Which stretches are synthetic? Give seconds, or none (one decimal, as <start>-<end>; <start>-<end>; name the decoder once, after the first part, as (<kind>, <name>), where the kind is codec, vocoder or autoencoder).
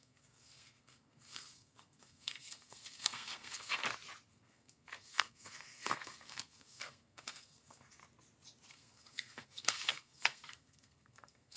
0.0-3.8 (codec, SNAC); 4.3-8.0; 8.7-11.6